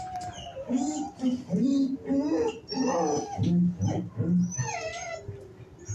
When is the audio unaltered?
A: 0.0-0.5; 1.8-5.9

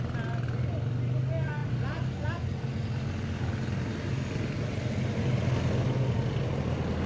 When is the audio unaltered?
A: 0.0-7.1

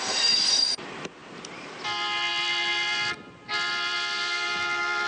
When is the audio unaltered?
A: 0.0-5.1

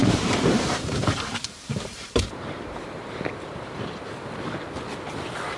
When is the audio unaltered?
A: 3.0-5.6

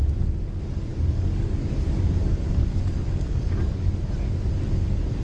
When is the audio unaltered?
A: 0.0-0.9; 4.0-5.2

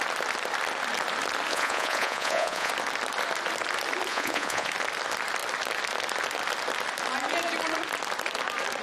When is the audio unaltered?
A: 0.0-1.5; 2.7-4.1; 4.7-8.8

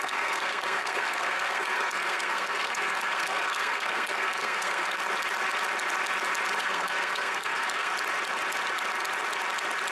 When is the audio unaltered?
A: 5.0-6.6; 7.9-9.9